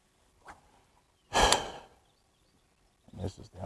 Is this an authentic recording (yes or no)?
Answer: yes